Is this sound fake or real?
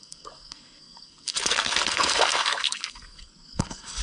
fake